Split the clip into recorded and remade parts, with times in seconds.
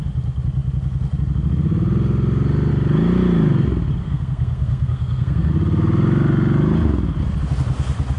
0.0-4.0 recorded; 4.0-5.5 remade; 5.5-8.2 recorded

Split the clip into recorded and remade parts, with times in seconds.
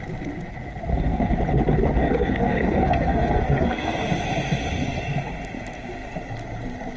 0.0-0.9 recorded; 0.9-1.4 remade; 1.4-2.0 recorded; 2.0-3.9 remade; 3.9-7.0 recorded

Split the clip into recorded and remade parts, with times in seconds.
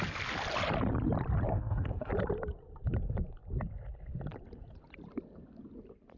0.0-1.5 recorded; 1.5-2.1 remade; 2.1-6.2 recorded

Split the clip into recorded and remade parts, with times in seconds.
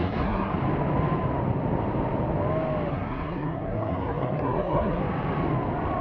0.0-0.5 remade; 0.5-2.9 recorded; 2.9-5.0 remade; 5.0-6.0 recorded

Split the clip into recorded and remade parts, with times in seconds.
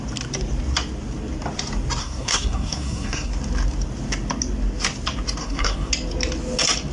0.0-2.0 recorded; 2.0-3.3 remade; 3.3-5.4 recorded; 5.4-5.9 remade; 5.9-6.9 recorded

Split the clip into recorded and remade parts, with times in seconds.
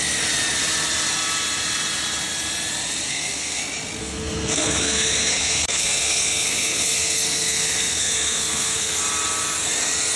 0.0-3.1 recorded; 3.1-3.6 remade; 3.6-4.0 recorded; 4.0-9.0 remade; 9.0-10.2 recorded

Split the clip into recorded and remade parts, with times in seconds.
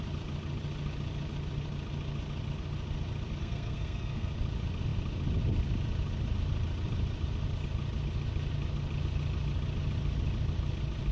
0.0-3.4 recorded; 3.4-4.3 remade; 4.3-11.1 recorded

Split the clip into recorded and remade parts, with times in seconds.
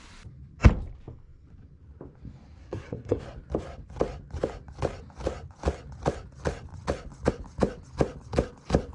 0.0-2.6 recorded; 2.6-3.2 remade; 3.2-8.9 recorded